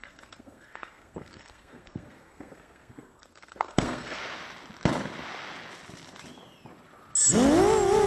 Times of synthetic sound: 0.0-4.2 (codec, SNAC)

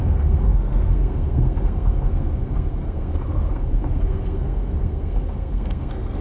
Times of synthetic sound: 0.0-6.2 (codec, SNAC)

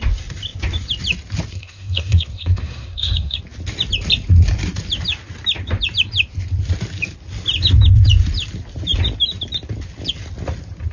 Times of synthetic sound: 1.5-3.4 (codec, SNAC)

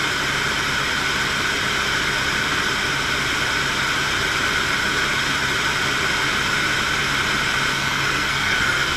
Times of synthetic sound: 7.7-9.0 (codec, SNAC)